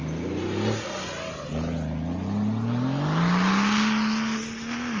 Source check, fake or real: real